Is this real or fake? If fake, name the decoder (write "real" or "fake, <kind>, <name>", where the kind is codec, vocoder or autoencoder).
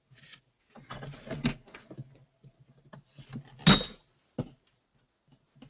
real